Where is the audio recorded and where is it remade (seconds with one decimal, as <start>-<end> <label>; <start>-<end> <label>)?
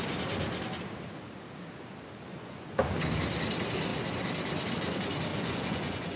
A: 0.0-2.3 recorded; 2.3-2.8 remade; 2.8-5.3 recorded; 5.3-6.2 remade